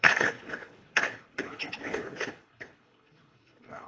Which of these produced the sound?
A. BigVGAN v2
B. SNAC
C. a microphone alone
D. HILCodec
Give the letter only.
D